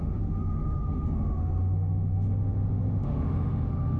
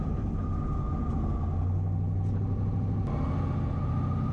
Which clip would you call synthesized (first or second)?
first